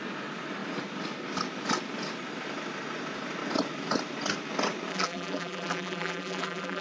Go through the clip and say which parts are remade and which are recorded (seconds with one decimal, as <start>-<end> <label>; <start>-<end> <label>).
0.0-4.9 recorded; 4.9-6.8 remade